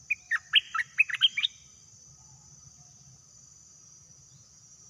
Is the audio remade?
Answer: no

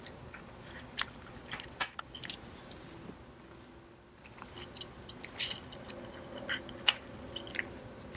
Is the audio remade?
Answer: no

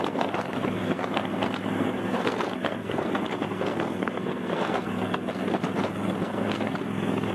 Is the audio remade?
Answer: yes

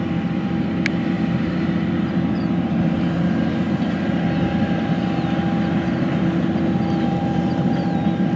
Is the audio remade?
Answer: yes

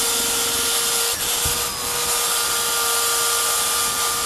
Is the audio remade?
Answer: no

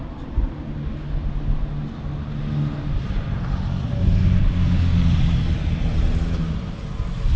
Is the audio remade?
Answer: no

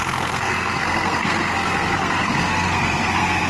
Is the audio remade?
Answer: yes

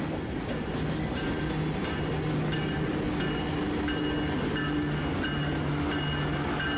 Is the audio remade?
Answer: no